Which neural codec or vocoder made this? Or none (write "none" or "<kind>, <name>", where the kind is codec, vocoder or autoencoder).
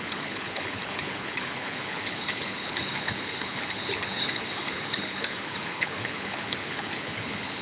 codec, HILCodec